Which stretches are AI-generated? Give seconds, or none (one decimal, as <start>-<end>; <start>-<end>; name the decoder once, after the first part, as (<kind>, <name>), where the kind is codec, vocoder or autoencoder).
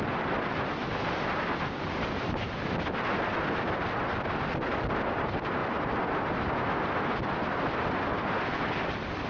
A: none